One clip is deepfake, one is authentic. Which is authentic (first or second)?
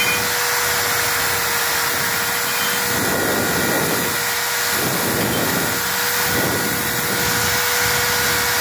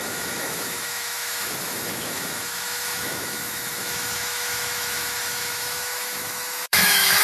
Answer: first